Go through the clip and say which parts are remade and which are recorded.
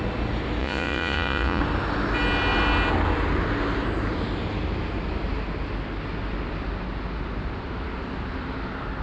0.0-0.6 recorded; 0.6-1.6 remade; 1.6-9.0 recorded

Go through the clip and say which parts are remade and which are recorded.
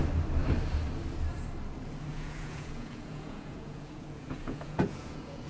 0.0-2.1 recorded; 2.1-5.5 remade